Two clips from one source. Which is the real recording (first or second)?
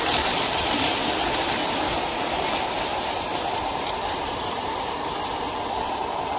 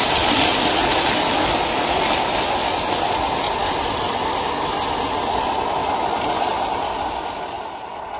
second